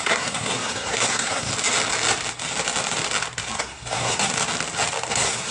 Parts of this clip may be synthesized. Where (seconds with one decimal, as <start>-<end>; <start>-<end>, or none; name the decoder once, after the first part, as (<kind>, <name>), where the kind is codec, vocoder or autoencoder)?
0.0-1.5 (codec, SNAC); 3.6-4.3; 5.1-5.5